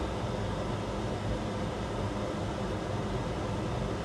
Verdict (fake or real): real